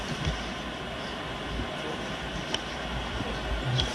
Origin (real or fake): real